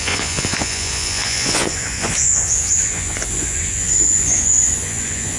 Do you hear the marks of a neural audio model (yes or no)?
yes